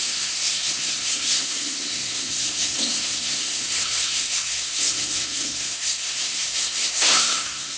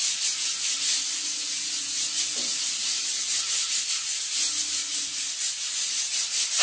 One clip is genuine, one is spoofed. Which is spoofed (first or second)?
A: first